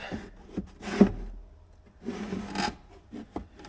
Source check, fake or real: real